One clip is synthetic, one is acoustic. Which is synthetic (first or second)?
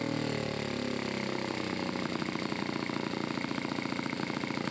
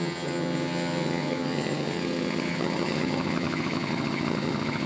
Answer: second